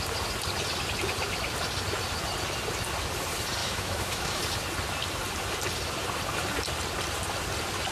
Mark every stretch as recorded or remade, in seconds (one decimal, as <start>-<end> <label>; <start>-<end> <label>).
0.0-3.6 recorded; 3.6-4.4 remade; 4.4-7.9 recorded